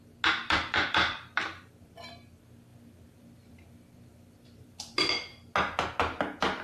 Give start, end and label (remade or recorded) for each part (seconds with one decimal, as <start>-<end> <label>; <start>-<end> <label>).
0.0-0.4 recorded; 0.4-2.1 remade; 2.1-2.7 recorded; 2.7-5.1 remade; 5.1-6.6 recorded